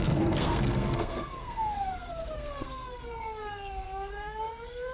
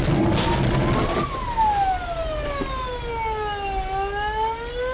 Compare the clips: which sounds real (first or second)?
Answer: second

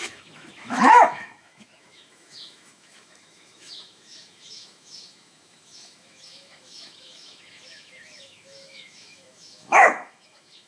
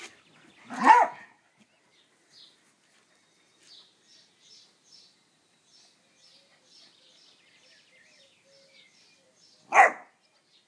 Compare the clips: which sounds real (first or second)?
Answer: second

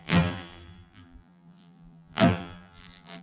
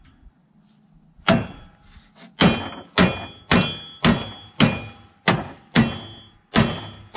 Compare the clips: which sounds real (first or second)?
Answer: second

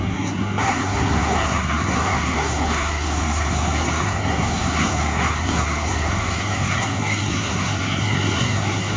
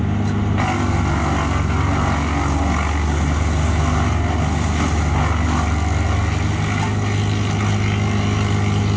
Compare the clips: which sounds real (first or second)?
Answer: second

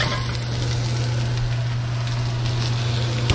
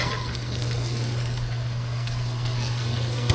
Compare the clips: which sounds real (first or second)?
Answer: first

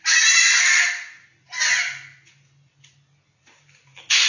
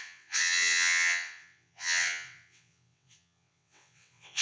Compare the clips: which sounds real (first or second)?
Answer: first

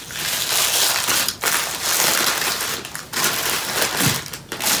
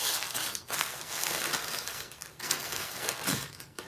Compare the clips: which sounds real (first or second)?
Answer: first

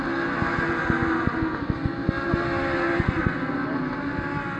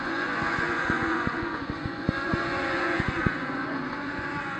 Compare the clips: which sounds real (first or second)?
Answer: first